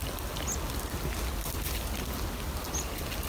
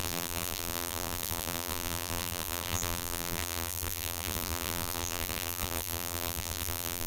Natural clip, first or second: first